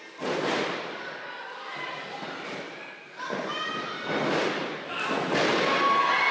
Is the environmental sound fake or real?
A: real